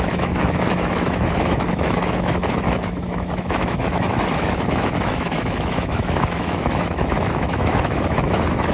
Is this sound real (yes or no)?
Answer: no